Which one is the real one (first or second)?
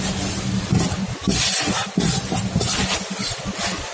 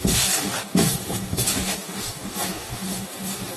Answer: first